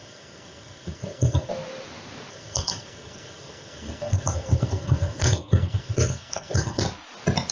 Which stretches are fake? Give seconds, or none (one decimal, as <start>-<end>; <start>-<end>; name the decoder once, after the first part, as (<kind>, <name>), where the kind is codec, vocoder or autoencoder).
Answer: 0.0-1.5 (codec, SNAC); 2.3-6.8